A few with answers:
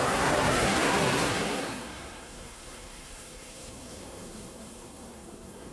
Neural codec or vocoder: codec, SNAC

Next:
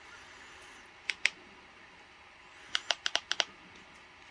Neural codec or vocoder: none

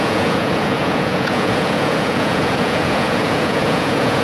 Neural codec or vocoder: vocoder, Vocos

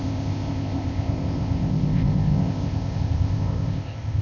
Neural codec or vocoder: codec, ZipCodec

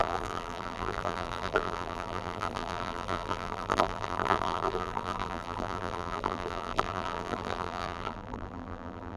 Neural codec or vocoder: vocoder, BigVGAN v2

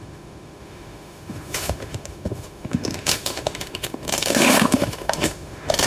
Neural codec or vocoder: autoencoder, DAC-VAE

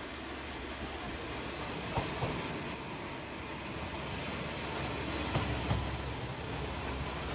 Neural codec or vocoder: none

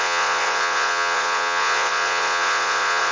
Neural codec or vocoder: vocoder, Vocos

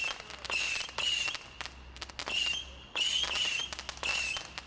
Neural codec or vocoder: none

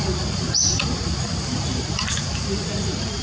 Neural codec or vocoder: vocoder, BigVGAN v2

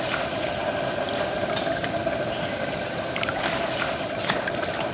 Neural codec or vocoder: none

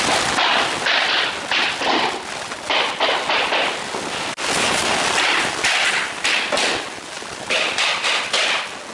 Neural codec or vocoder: none